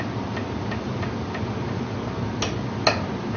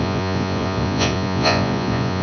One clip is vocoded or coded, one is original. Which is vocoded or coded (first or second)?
second